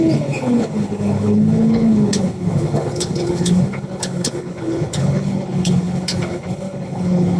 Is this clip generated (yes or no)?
yes